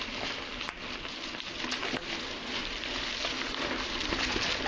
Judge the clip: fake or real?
real